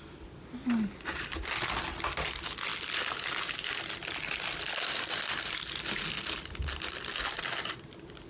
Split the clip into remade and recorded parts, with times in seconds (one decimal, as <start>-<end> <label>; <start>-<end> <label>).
0.0-8.3 recorded